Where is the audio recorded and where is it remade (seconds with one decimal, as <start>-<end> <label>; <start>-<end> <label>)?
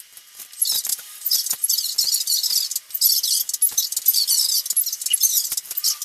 0.0-0.9 recorded; 0.9-1.9 remade; 1.9-6.0 recorded